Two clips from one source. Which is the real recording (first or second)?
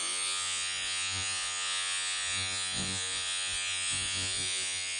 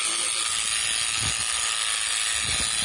second